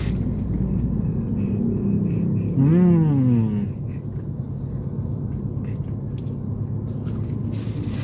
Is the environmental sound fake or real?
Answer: real